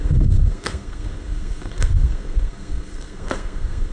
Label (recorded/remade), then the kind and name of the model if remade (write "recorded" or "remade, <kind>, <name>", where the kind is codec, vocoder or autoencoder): remade, codec, SNAC